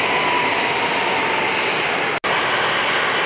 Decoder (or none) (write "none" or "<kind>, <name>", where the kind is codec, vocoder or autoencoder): none